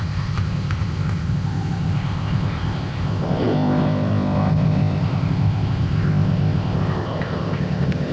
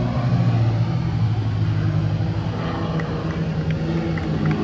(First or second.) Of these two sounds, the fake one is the first